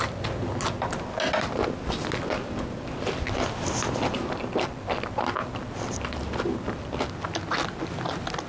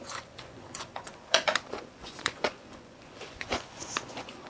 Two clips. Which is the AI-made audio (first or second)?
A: second